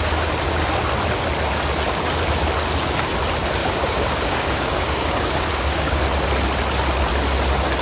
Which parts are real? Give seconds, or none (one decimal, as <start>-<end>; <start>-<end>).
0.0-3.6; 6.0-7.8